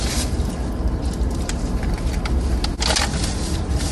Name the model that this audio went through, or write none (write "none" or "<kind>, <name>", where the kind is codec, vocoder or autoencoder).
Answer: none